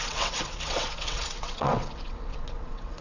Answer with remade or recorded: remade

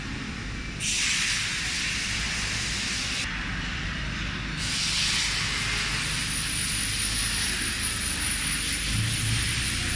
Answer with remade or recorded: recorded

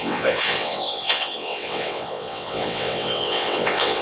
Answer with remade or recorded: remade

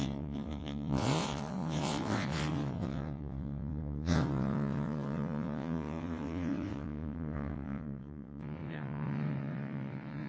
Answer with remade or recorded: remade